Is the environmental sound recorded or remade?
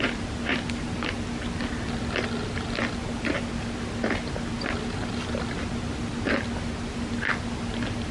recorded